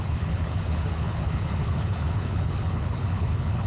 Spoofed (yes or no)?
yes